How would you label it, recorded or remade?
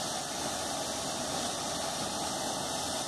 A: recorded